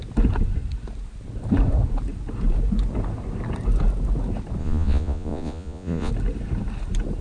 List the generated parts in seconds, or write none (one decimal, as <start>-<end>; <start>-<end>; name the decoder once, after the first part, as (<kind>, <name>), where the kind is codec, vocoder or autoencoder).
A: 4.6-6.1 (vocoder, Vocos)